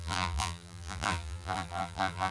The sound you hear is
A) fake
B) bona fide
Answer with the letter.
A